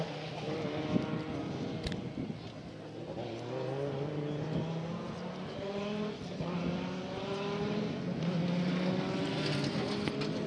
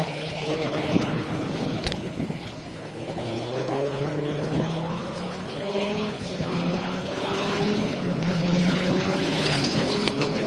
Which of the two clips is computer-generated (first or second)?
second